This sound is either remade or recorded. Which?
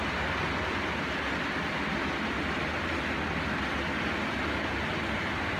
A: recorded